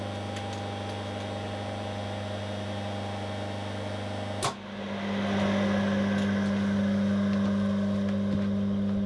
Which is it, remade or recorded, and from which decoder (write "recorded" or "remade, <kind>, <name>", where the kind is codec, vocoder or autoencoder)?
recorded